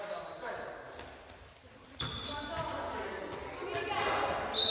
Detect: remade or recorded recorded